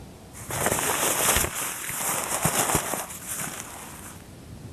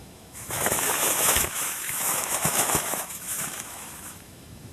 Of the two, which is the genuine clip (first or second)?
first